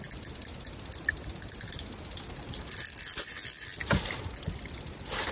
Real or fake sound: real